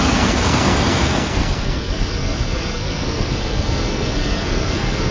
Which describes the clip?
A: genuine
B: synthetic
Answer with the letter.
B